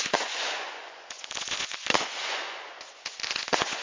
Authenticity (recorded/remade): remade